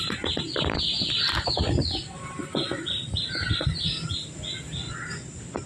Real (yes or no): yes